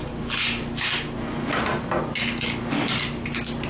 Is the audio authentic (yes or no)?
yes